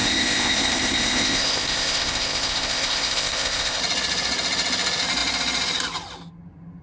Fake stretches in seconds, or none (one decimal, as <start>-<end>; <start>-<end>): 0.0-3.8